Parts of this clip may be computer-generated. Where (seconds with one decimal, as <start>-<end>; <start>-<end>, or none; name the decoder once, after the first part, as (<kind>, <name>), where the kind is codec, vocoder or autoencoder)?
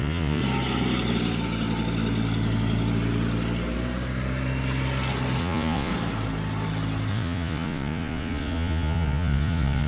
0.0-0.4 (vocoder, Vocos); 5.4-5.9; 7.1-9.9